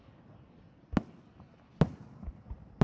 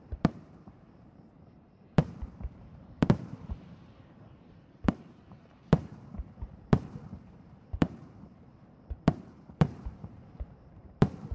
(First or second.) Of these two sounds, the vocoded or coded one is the second